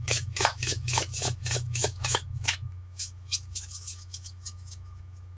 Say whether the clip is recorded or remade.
remade